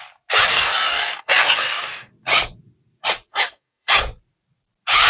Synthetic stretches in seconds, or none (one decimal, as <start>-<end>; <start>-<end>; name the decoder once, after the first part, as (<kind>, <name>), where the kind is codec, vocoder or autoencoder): 0.5-2.1 (codec, DAC); 3.3-4.0